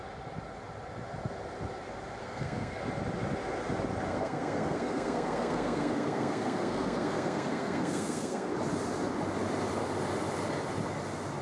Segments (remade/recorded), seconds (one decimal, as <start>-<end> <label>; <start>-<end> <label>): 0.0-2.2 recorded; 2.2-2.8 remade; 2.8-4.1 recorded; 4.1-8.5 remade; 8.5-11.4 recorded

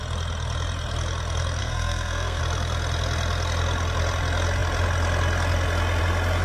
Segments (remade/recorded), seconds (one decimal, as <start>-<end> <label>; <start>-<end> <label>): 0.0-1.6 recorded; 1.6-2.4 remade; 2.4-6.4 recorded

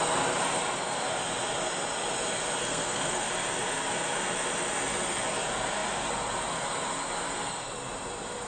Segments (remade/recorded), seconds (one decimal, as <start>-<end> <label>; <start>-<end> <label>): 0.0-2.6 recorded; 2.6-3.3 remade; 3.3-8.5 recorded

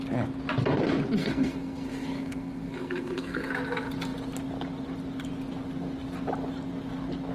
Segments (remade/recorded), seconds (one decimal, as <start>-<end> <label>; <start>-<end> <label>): 0.0-1.2 recorded; 1.2-3.5 remade; 3.5-7.3 recorded